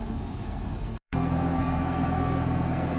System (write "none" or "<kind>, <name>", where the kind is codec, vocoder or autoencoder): codec, SNAC